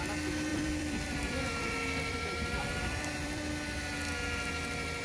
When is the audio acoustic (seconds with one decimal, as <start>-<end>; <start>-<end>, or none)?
0.0-0.5; 3.5-5.0

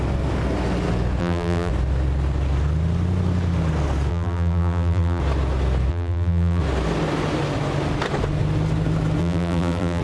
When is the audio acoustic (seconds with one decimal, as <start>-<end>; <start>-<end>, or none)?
0.0-1.2; 1.7-4.1; 5.2-5.9; 6.6-9.2

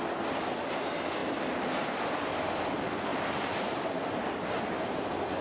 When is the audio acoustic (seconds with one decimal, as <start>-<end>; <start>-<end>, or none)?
0.0-3.1; 3.8-5.4

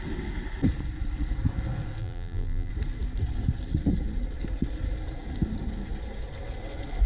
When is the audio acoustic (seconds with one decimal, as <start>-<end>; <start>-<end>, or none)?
0.0-2.0; 2.7-7.1

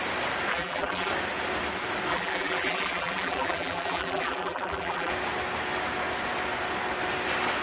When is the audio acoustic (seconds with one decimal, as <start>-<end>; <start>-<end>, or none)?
0.0-0.5; 1.1-2.1; 5.1-7.6